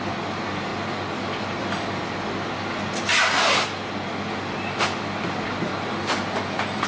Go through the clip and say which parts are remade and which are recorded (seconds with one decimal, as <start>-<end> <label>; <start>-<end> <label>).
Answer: 0.0-6.9 recorded